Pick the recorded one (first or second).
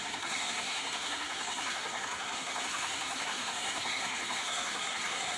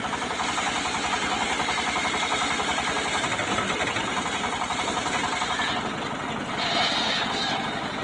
second